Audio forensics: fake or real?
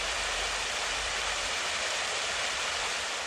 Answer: real